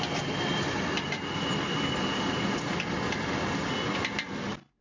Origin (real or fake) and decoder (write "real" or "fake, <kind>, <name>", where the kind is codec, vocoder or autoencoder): real